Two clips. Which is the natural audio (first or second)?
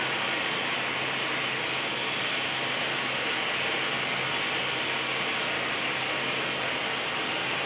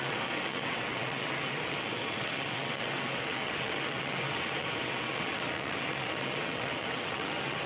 first